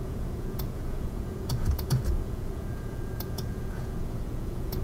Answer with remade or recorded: remade